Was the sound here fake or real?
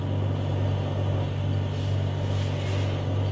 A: real